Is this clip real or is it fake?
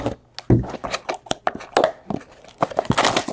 real